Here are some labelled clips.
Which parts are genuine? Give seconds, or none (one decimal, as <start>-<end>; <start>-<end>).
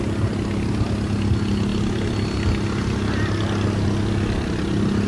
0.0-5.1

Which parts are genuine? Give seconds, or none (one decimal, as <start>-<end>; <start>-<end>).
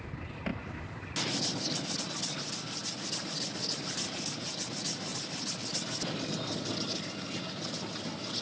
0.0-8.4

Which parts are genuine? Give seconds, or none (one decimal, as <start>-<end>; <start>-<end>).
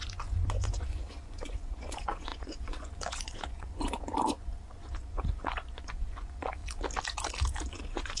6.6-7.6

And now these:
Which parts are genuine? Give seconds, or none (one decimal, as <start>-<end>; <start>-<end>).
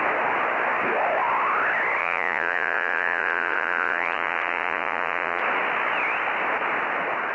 0.0-2.0; 5.4-7.3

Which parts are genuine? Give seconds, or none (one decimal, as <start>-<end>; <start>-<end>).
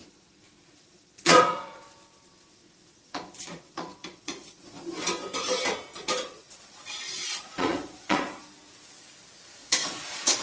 1.8-2.9; 4.9-5.9; 8.4-9.6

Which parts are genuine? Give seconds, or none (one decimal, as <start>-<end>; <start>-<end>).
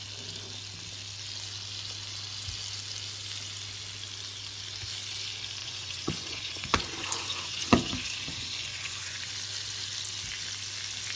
0.0-5.6; 9.3-11.2